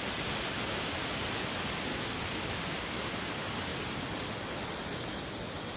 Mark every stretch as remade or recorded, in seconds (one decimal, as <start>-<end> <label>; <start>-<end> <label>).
0.0-1.9 recorded; 1.9-3.0 remade; 3.0-5.8 recorded